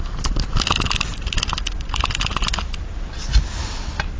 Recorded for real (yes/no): yes